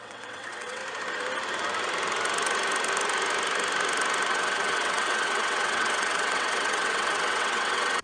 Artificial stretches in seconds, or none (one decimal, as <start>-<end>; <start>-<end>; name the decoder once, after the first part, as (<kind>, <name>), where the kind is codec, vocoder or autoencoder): 0.0-0.8 (vocoder, WaveNeXt); 4.3-8.0

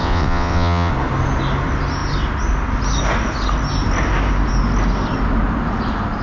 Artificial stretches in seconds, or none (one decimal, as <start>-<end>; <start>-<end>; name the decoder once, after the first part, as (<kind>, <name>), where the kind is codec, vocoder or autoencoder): 0.0-0.9 (vocoder, WaveNeXt)

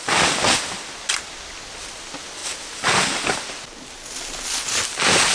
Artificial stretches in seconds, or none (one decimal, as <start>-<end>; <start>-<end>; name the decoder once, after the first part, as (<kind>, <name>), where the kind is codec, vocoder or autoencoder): none

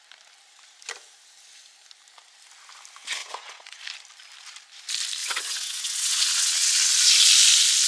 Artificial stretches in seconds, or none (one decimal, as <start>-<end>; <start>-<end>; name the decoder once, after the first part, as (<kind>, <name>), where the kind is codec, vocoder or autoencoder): 3.2-3.8 (vocoder, WaveNeXt); 5.2-6.9

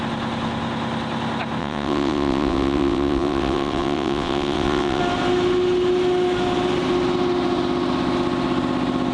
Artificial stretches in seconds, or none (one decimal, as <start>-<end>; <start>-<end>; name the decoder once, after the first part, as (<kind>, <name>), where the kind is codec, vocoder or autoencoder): 1.6-5.0 (vocoder, WaveNeXt)

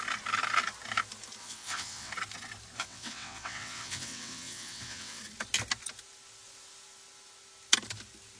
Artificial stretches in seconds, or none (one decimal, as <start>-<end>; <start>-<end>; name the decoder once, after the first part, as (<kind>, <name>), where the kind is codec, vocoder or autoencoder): 1.4-2.1 (vocoder, WaveNeXt); 2.8-5.2

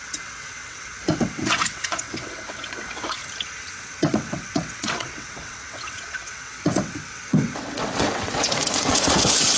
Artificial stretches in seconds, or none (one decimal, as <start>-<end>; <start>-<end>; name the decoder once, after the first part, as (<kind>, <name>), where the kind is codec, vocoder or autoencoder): 0.0-3.2 (vocoder, WaveNeXt); 3.8-9.6